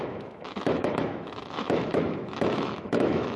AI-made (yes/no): yes